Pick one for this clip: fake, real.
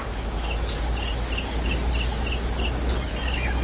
real